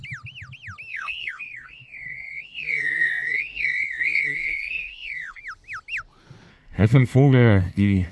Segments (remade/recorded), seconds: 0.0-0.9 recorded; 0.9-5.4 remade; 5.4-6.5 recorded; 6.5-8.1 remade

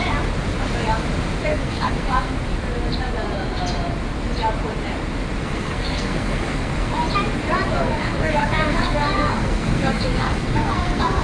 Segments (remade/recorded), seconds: 0.0-1.5 recorded; 1.5-2.3 remade; 2.3-5.4 recorded; 5.4-6.9 remade; 6.9-7.8 recorded; 7.8-11.2 remade

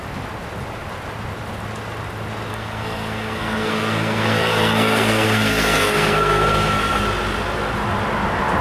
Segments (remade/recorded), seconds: 0.0-2.5 recorded; 2.5-7.0 remade; 7.0-8.6 recorded

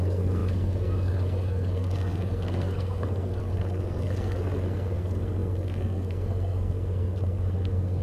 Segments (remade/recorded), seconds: 0.0-8.0 remade

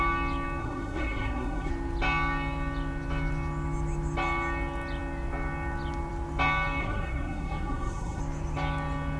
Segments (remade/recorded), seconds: 0.0-0.6 recorded; 0.6-1.7 remade; 1.7-6.8 recorded; 6.8-8.2 remade; 8.2-9.2 recorded

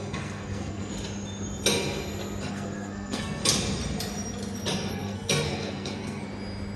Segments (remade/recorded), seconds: 0.0-0.9 remade; 0.9-2.5 recorded; 2.5-3.4 remade; 3.4-4.9 recorded; 4.9-6.2 remade; 6.2-6.8 recorded

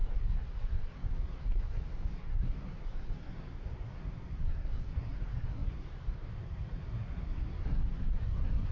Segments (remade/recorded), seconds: 0.0-8.7 remade